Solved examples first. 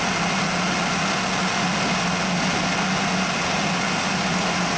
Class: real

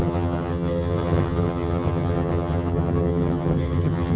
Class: fake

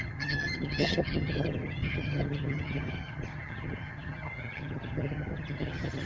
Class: fake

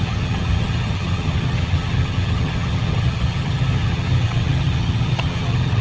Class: fake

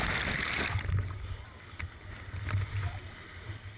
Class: real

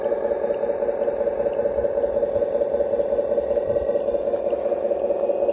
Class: real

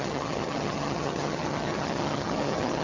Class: fake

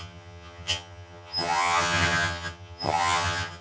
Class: fake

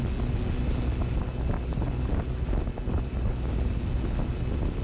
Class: real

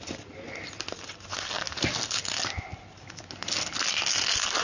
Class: real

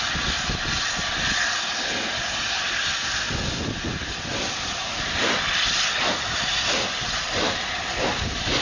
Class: real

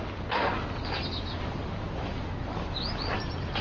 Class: real